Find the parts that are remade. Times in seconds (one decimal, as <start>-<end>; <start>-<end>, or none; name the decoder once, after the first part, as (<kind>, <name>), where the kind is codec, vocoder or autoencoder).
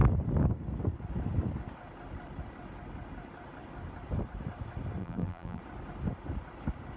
5.0-5.6 (vocoder, BigVGAN v2)